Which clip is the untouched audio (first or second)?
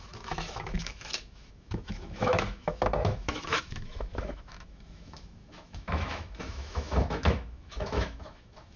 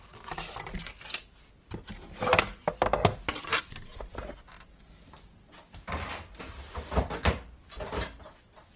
second